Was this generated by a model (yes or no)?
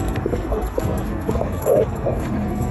yes